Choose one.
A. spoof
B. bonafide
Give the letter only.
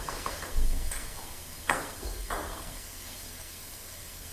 A